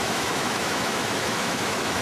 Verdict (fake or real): fake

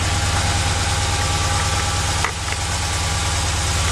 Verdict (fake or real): real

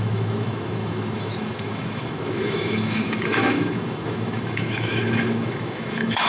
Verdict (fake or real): fake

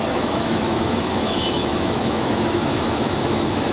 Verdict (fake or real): fake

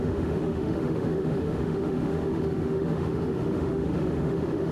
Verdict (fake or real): fake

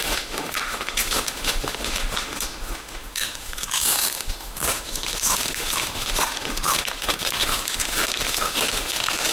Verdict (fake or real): fake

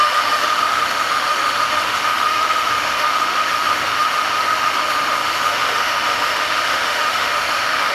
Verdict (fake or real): fake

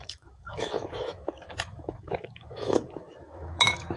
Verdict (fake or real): fake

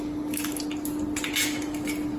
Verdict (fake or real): real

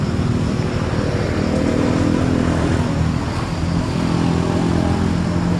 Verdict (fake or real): real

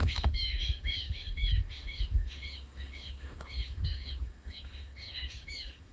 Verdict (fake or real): fake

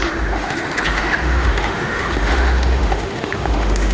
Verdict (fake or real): fake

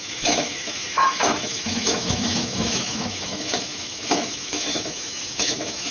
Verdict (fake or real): fake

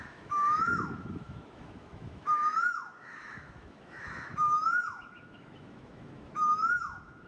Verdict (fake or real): fake